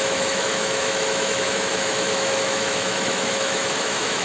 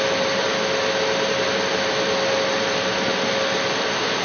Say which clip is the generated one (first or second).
first